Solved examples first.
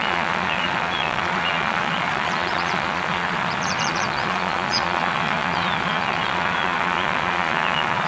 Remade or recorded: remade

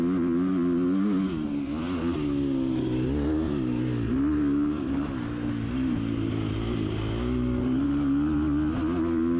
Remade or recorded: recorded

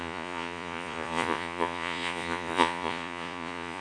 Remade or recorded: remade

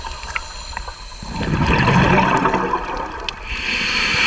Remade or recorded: recorded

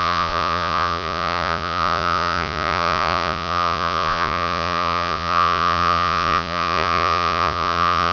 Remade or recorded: remade